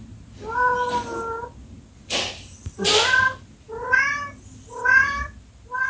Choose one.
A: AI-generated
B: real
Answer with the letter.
B